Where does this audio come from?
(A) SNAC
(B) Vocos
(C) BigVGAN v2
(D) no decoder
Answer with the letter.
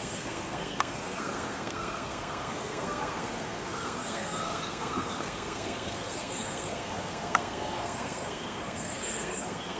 A